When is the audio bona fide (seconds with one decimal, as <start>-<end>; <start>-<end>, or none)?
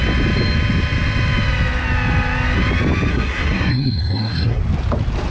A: 0.0-3.1; 4.6-5.3